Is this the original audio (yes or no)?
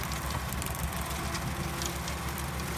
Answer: yes